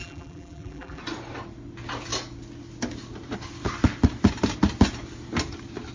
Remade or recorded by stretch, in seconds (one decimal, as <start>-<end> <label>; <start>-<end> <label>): 0.0-1.0 remade; 1.0-5.9 recorded

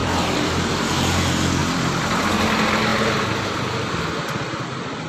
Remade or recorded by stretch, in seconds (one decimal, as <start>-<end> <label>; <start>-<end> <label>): 0.0-0.7 remade; 0.7-1.6 recorded; 1.6-2.2 remade; 2.2-5.1 recorded

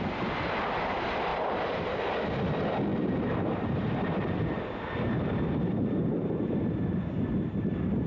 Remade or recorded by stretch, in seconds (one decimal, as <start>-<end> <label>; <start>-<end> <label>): 0.0-1.3 recorded; 1.3-2.0 remade; 2.0-2.9 recorded; 2.9-6.9 remade; 6.9-8.1 recorded

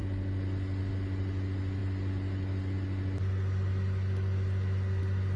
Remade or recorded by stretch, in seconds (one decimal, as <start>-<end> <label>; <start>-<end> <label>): 0.0-5.4 recorded

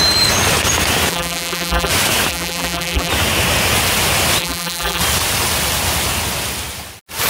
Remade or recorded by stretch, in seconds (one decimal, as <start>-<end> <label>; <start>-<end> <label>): 0.0-1.1 recorded; 1.1-1.9 remade; 1.9-2.3 recorded; 2.3-3.1 remade; 3.1-4.4 recorded; 4.4-5.0 remade; 5.0-7.3 recorded

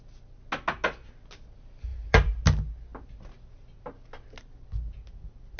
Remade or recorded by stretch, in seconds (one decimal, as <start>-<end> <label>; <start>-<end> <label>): 0.0-1.9 recorded; 1.9-2.4 remade; 2.4-5.6 recorded